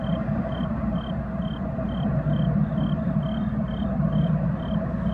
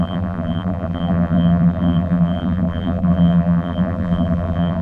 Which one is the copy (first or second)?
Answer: second